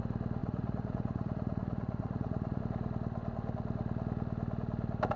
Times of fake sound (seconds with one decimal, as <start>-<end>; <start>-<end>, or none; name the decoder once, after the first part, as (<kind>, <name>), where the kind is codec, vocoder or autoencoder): 0.4-2.6 (vocoder, Vocos)